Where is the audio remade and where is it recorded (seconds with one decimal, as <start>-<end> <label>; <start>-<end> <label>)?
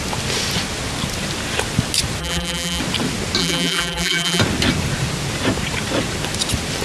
0.0-2.2 recorded; 2.2-2.8 remade; 2.8-3.4 recorded; 3.4-4.4 remade; 4.4-6.8 recorded